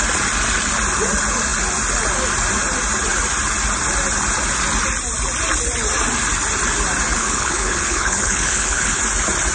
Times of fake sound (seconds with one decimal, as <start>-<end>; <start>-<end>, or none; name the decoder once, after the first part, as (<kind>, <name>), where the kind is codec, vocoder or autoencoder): 7.2-9.0 (codec, HILCodec)